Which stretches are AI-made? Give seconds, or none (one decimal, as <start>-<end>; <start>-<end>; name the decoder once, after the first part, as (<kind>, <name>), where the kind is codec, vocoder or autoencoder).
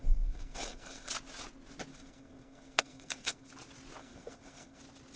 0.0-1.1 (codec, SNAC); 1.9-3.5; 4.0-4.8